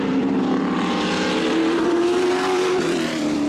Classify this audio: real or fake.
fake